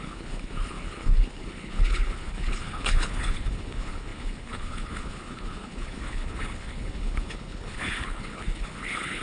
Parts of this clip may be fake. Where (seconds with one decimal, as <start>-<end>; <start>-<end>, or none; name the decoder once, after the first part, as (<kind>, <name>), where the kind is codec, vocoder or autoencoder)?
0.0-9.2 (codec, HILCodec)